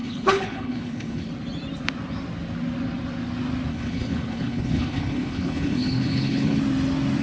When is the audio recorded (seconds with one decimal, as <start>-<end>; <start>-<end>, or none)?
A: 1.3-3.7; 6.6-7.2